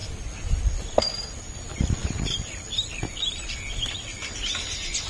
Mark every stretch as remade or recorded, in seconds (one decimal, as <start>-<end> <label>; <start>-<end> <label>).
0.0-5.1 recorded